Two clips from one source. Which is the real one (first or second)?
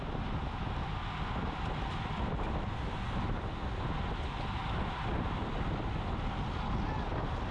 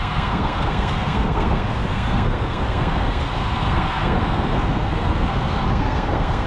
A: first